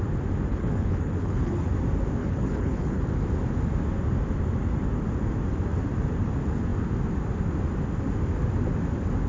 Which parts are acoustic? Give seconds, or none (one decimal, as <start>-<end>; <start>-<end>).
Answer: 0.0-0.5; 1.7-2.2; 3.0-9.3